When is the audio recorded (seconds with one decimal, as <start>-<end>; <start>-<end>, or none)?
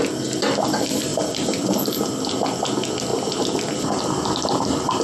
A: 0.0-1.1; 2.0-3.1; 3.7-5.0